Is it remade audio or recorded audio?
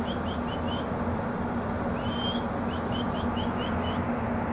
recorded